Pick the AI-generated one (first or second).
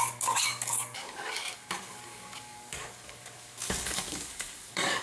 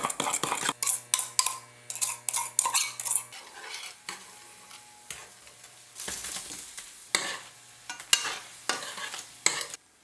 first